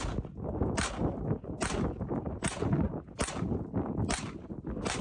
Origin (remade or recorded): recorded